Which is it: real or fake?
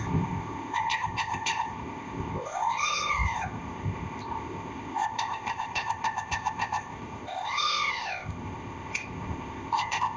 fake